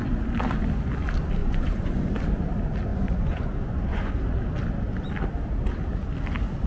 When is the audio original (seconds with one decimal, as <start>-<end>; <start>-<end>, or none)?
0.0-1.4; 2.1-2.9; 4.1-6.7